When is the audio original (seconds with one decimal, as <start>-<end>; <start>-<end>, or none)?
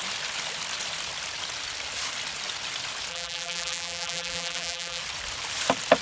0.0-3.1; 5.0-6.0